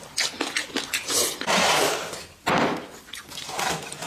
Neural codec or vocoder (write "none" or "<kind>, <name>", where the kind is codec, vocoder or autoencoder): none